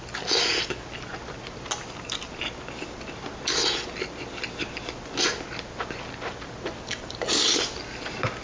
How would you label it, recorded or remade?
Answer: recorded